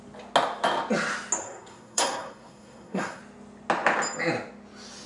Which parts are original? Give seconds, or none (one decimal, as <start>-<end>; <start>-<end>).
0.0-1.4; 3.2-5.1